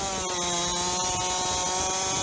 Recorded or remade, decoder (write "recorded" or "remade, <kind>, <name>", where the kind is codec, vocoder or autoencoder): recorded